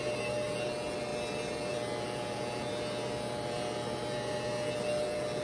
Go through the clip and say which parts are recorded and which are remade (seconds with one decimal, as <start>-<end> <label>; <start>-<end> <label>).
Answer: 0.0-5.4 recorded